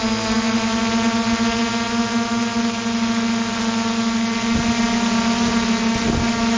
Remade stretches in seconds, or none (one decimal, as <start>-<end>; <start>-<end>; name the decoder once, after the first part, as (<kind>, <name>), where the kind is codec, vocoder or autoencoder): none